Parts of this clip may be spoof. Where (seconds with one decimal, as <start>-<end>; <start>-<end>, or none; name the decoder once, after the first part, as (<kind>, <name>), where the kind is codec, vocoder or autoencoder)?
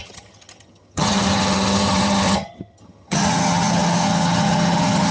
0.0-5.1 (vocoder, HiFi-GAN)